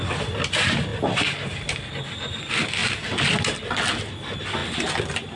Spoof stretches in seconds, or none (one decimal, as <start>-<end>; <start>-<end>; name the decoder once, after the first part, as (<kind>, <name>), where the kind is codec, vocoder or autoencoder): 2.8-3.9 (vocoder, BigVGAN v2); 4.6-5.3